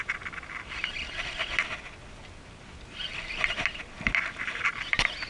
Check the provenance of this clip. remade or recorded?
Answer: recorded